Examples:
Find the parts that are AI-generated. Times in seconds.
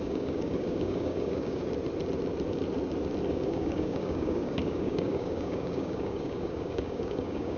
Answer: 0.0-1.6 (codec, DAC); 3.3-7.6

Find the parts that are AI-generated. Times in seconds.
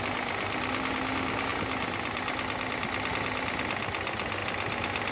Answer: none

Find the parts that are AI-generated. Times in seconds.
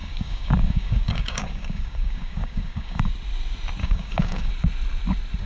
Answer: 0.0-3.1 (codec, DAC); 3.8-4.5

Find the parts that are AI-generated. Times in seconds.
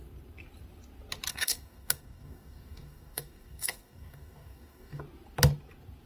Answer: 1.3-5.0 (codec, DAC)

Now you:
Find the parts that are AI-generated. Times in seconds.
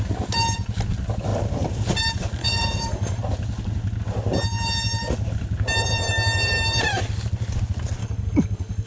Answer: 2.4-3.2 (codec, DAC); 8.0-8.9